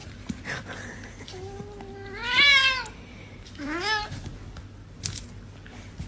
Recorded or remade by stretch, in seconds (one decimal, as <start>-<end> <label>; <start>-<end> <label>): 0.0-0.5 remade; 0.5-2.5 recorded; 2.5-3.5 remade; 3.5-6.1 recorded